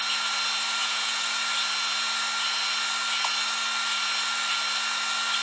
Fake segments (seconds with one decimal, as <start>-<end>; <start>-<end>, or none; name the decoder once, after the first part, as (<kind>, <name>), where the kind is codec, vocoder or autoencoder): 0.8-1.4 (vocoder, Vocos)